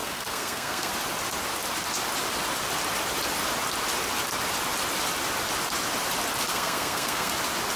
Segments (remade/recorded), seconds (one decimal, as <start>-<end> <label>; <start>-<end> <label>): 0.0-0.9 remade; 0.9-6.5 recorded; 6.5-7.3 remade; 7.3-7.8 recorded